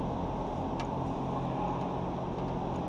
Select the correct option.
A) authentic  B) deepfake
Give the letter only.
A